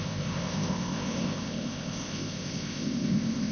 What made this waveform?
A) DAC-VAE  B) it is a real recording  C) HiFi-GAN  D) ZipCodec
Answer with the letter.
D